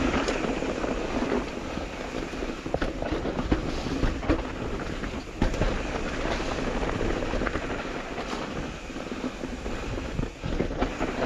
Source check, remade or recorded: recorded